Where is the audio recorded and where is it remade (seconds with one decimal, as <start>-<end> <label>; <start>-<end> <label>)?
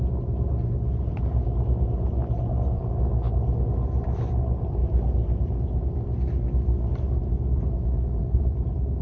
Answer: 0.0-4.8 recorded; 4.8-5.8 remade; 5.8-9.0 recorded